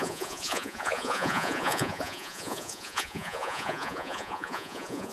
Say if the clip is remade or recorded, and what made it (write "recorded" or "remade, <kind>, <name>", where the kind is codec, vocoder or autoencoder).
remade, vocoder, Vocos